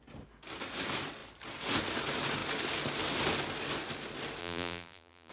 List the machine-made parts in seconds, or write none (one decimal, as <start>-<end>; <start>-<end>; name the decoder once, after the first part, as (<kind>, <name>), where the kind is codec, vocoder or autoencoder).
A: 4.4-5.3 (vocoder, BigVGAN v2)